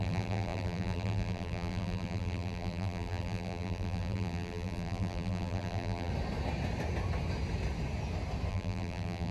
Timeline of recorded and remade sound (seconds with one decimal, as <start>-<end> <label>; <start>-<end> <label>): 0.0-6.1 remade; 6.1-8.5 recorded; 8.5-9.3 remade